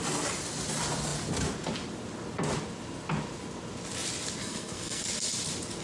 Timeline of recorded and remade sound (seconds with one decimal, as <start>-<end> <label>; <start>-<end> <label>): 0.0-4.4 recorded; 4.4-5.0 remade; 5.0-5.8 recorded